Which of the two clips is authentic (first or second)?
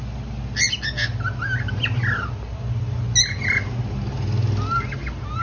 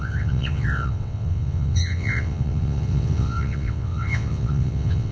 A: first